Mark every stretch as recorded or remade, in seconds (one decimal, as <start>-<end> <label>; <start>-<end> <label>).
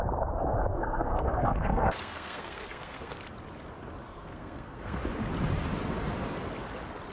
0.0-0.7 recorded; 0.7-3.2 remade; 3.2-4.0 recorded; 4.0-5.0 remade; 5.0-7.1 recorded